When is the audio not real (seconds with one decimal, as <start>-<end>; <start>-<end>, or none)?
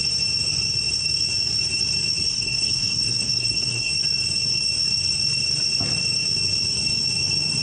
2.3-3.9